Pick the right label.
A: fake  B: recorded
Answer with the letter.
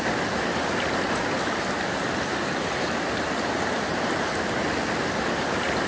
B